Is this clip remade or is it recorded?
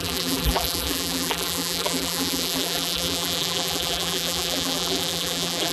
remade